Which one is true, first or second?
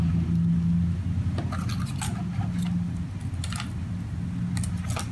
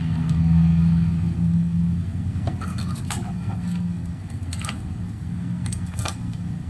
first